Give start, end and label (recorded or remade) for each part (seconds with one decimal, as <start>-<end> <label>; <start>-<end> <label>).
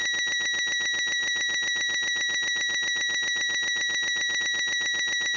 0.0-5.4 recorded